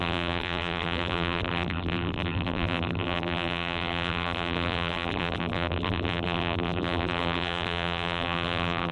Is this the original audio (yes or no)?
no